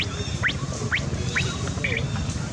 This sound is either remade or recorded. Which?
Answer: recorded